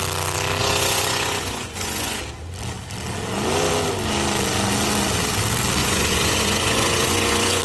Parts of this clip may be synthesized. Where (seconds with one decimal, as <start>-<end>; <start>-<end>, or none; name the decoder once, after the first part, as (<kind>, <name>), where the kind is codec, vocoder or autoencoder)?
0.6-2.2 (vocoder, Vocos); 5.8-7.6